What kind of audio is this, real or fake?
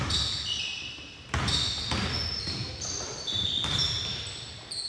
real